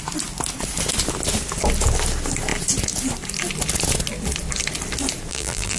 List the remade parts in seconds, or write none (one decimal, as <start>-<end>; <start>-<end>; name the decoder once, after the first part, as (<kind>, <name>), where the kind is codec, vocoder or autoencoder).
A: 5.3-5.8 (vocoder, BigVGAN v2)